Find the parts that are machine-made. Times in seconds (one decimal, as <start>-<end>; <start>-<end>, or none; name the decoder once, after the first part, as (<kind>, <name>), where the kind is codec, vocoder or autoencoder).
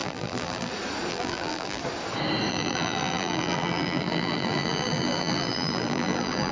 0.0-0.7 (vocoder, BigVGAN v2); 1.1-1.8; 2.5-6.5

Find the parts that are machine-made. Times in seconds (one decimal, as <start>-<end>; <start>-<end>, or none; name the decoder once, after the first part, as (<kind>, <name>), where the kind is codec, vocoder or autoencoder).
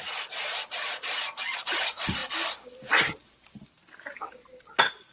0.0-2.2 (vocoder, BigVGAN v2); 2.9-5.1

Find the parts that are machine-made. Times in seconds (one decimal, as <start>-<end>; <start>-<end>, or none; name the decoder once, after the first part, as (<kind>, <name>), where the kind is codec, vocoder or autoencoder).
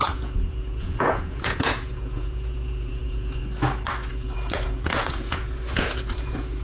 0.0-3.4 (vocoder, Vocos); 4.1-6.6